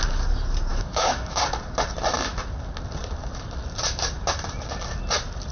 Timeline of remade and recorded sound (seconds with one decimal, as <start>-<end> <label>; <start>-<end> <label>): 0.0-0.7 recorded; 0.7-1.4 remade; 1.4-5.5 recorded